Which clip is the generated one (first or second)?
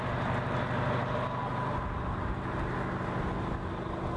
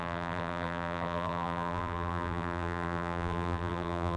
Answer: second